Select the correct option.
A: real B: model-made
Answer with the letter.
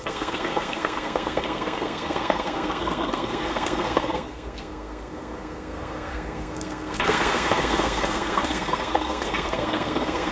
B